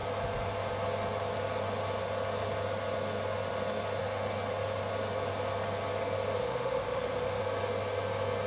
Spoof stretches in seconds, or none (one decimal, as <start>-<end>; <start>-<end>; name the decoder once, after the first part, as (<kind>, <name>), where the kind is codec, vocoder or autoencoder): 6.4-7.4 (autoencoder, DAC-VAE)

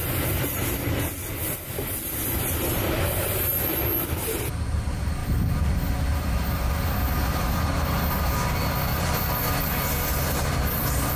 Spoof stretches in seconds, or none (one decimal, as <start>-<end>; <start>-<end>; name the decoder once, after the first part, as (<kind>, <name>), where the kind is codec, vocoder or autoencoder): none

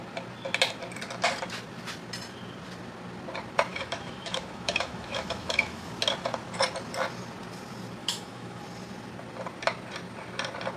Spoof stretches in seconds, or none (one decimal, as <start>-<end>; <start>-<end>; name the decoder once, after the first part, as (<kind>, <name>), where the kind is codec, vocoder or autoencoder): 3.7-5.9 (autoencoder, DAC-VAE); 8.0-8.6

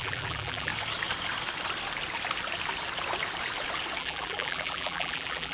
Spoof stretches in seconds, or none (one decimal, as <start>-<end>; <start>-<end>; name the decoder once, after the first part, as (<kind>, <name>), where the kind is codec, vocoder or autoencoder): 0.0-0.7 (vocoder, BigVGAN v2); 4.0-5.5

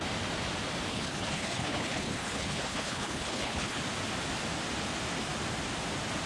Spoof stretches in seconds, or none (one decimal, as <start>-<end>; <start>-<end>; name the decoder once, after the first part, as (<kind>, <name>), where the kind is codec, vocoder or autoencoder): 0.9-3.8 (codec, HILCodec)

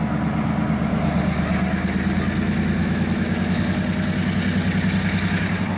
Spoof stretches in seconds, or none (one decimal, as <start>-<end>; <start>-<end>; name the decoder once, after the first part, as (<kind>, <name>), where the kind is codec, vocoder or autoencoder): 2.8-3.6 (autoencoder, DAC-VAE)